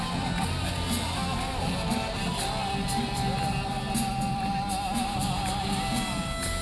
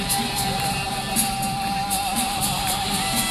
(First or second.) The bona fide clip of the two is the first